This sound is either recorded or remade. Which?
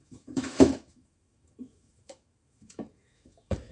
remade